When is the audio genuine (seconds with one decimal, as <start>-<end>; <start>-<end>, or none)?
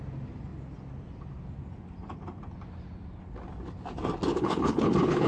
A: 0.0-4.3